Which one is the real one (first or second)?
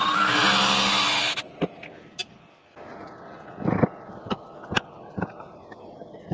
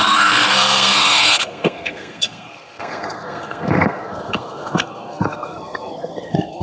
first